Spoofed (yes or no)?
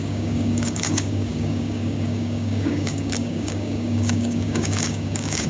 yes